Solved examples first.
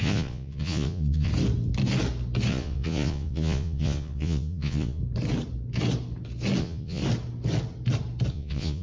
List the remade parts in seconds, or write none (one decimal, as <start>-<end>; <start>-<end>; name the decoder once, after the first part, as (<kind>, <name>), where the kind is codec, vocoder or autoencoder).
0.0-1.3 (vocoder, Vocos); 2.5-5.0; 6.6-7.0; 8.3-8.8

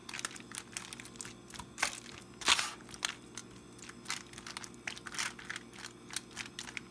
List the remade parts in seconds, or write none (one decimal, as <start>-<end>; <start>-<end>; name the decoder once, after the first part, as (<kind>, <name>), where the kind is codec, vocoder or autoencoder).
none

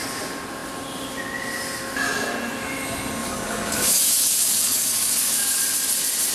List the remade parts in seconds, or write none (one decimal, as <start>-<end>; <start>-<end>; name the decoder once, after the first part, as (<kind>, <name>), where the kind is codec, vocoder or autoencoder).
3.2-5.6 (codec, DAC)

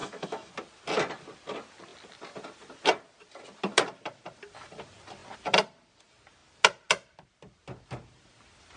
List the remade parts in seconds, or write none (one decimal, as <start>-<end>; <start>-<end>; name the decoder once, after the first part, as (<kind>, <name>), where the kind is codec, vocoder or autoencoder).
0.0-0.5 (autoencoder, DAC-VAE)

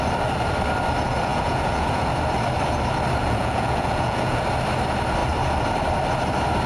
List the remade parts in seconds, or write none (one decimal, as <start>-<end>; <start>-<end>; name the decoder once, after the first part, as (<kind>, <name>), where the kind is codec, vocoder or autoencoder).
1.3-2.1 (vocoder, Vocos); 3.2-4.4

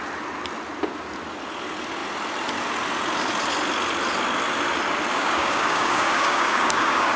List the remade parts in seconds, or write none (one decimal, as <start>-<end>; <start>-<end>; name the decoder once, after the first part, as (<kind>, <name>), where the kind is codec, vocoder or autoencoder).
5.1-7.2 (codec, DAC)

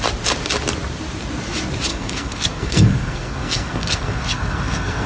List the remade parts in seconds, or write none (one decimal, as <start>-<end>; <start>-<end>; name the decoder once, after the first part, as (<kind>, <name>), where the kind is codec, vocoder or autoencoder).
1.9-5.1 (codec, SNAC)